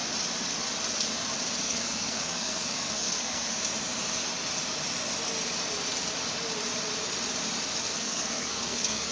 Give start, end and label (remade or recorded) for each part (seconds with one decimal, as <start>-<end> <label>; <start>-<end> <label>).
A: 0.0-1.6 recorded; 1.6-3.5 remade; 3.5-7.8 recorded; 7.8-9.1 remade